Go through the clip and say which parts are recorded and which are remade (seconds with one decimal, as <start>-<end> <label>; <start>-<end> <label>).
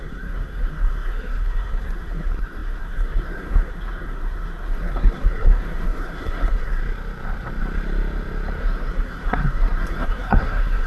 0.0-6.8 remade; 6.8-8.6 recorded; 8.6-10.9 remade